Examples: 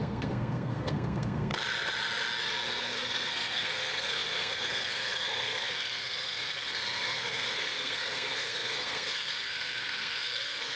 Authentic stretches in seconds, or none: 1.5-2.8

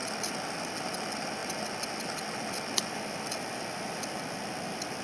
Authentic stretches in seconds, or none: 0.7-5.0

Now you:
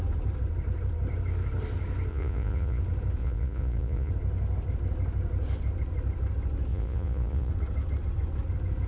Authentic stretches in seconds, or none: 0.0-2.1; 2.8-3.2; 4.1-6.7; 7.5-8.9